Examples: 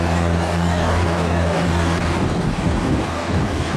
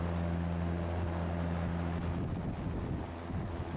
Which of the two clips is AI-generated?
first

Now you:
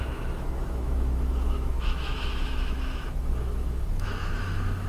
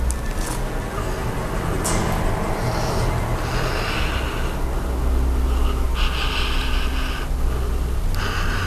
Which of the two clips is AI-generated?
first